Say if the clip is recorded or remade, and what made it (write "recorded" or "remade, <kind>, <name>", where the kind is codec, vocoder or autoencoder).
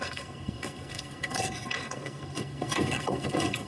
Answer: remade, codec, SNAC